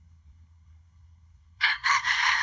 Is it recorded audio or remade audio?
remade